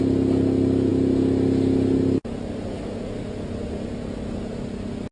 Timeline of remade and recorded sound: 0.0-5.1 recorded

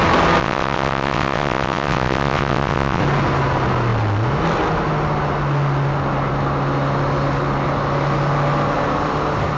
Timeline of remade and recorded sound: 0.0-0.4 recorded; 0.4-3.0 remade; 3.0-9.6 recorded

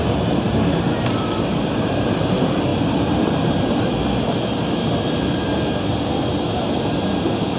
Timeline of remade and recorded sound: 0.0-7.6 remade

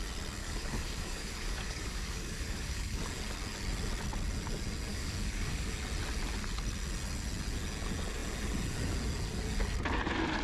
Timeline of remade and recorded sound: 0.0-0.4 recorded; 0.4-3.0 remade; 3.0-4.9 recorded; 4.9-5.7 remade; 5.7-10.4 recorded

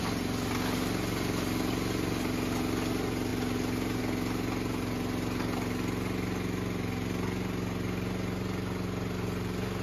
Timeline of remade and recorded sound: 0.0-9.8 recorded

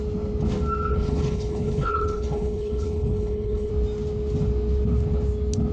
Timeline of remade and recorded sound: 0.0-0.9 recorded; 0.9-3.7 remade; 3.7-5.7 recorded

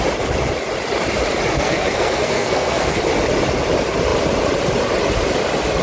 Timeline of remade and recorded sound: 0.0-1.5 recorded; 1.5-3.0 remade; 3.0-5.8 recorded

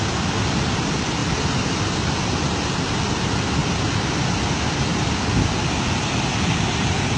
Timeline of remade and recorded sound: 0.0-1.2 recorded; 1.2-1.9 remade; 1.9-3.6 recorded; 3.6-5.3 remade; 5.3-7.2 recorded